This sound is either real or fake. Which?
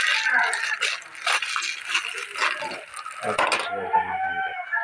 real